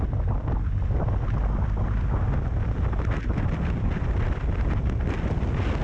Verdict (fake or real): real